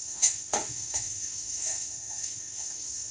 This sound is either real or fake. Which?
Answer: fake